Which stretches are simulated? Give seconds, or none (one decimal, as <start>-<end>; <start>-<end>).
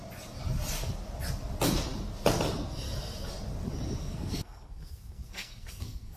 4.0-6.2